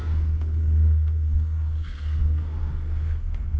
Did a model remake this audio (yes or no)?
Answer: yes